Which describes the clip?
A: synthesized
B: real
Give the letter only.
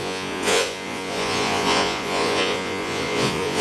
A